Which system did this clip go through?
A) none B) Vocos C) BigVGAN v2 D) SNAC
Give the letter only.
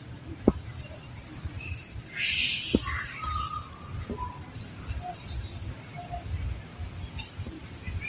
A